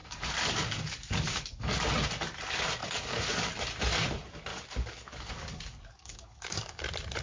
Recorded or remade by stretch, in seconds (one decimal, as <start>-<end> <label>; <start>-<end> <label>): 0.0-1.9 remade; 1.9-2.8 recorded; 2.8-3.5 remade; 3.5-4.5 recorded; 4.5-6.8 remade; 6.8-7.2 recorded